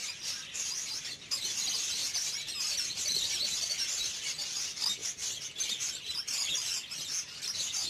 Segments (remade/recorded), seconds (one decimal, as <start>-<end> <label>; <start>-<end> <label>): 0.0-0.8 recorded; 0.8-2.0 remade; 2.0-3.3 recorded; 3.3-5.0 remade; 5.0-7.4 recorded; 7.4-7.9 remade